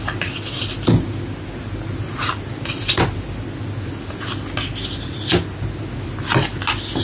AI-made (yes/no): no